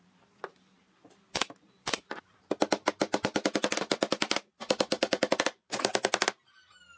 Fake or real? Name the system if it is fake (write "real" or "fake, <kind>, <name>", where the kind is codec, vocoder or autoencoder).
fake, vocoder, BigVGAN v2